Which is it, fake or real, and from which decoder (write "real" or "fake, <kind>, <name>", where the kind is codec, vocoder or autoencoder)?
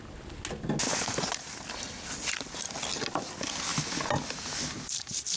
real